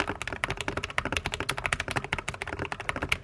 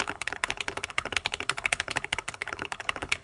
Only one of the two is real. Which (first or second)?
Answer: first